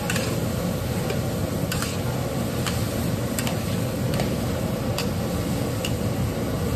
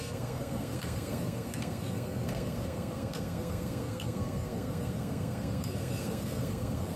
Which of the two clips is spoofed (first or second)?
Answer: second